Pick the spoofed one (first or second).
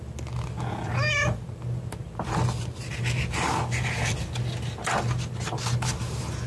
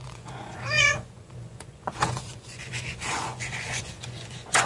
second